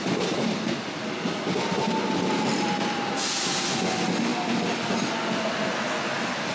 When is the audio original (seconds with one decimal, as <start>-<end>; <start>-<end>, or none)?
0.0-6.5